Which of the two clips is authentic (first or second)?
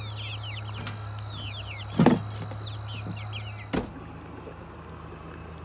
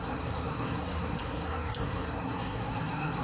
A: first